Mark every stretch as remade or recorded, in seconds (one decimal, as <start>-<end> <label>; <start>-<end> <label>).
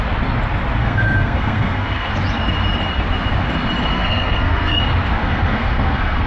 0.0-0.8 recorded; 0.8-2.1 remade; 2.1-3.9 recorded; 3.9-4.8 remade; 4.8-5.2 recorded; 5.2-6.3 remade